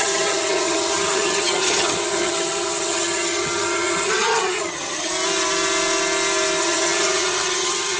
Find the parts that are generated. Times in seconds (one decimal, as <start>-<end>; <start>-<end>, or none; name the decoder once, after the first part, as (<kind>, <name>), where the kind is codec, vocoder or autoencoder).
0.0-5.1 (vocoder, HiFi-GAN); 6.6-8.0